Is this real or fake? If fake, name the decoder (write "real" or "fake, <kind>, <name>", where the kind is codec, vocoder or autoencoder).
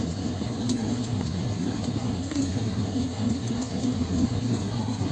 fake, codec, SNAC